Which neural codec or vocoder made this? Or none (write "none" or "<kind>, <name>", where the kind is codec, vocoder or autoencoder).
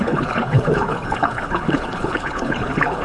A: codec, HILCodec